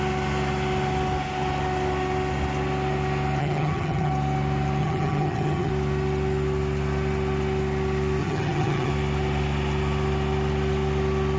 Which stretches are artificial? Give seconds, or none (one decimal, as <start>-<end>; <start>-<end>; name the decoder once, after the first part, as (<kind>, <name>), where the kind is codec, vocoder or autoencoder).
3.4-4.1 (vocoder, HiFi-GAN); 4.8-5.7; 8.2-8.9